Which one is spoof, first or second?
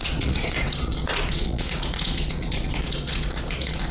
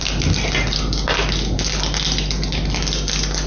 first